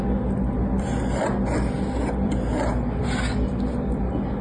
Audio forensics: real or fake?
real